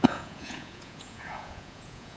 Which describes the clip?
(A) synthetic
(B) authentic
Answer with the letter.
A